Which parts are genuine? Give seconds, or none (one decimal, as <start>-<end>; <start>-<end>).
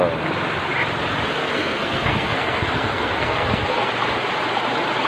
0.0-1.4; 3.9-5.1